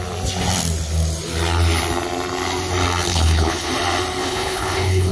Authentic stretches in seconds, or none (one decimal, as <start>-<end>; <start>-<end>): 0.0-3.1; 3.7-4.2